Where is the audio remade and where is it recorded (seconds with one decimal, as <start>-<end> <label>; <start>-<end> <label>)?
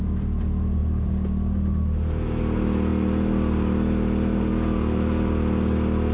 0.0-6.1 recorded